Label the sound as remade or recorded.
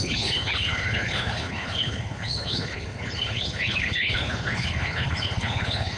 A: remade